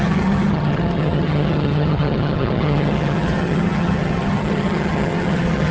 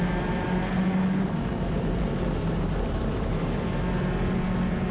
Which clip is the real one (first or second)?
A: second